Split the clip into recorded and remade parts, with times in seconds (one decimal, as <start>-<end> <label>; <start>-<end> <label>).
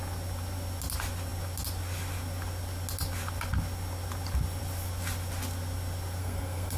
0.0-6.2 recorded; 6.2-6.8 remade